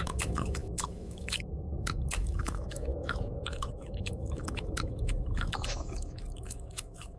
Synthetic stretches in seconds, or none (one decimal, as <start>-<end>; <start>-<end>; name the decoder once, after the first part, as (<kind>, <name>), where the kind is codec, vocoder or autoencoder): 0.0-7.2 (autoencoder, DAC-VAE)